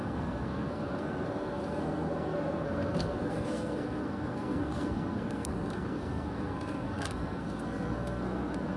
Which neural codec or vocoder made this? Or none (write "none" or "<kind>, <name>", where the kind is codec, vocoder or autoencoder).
codec, SNAC